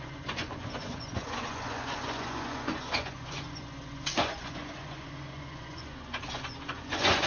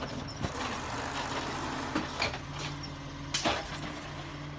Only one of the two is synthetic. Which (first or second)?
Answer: first